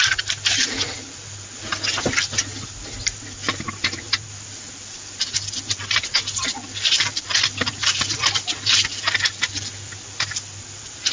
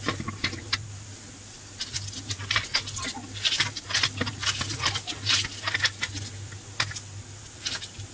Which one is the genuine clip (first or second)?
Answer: second